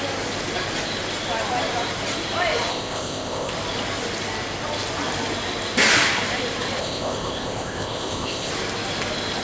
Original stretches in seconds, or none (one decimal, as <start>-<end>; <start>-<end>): 0.0-2.7; 3.5-6.8; 8.5-9.4